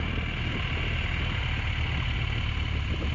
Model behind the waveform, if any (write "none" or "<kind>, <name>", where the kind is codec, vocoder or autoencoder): none